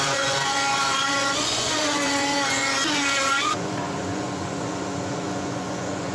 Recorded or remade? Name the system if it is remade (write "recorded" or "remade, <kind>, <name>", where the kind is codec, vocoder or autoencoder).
remade, vocoder, Vocos